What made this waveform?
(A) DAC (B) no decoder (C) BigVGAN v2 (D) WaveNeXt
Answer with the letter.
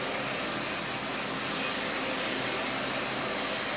B